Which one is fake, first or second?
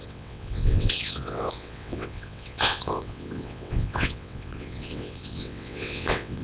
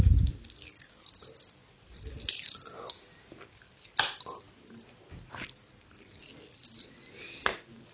first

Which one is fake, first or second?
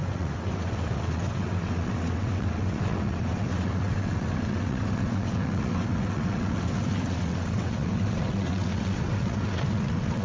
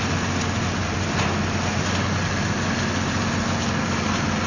first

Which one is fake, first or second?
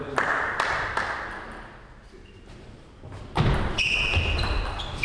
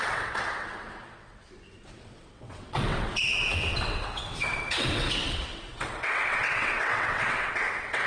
second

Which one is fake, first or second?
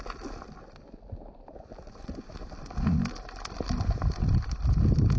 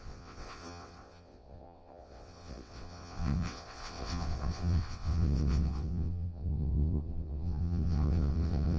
second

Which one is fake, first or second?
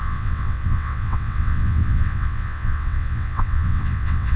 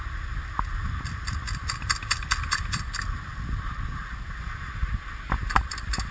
first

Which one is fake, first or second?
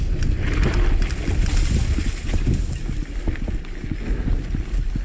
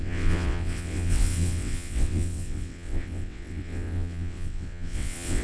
second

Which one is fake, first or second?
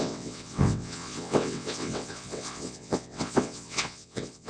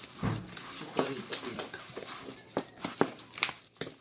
first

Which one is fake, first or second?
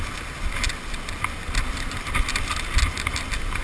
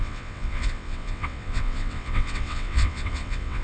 second